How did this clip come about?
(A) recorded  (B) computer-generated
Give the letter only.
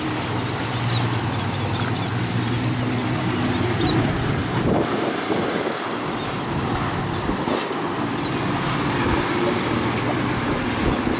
A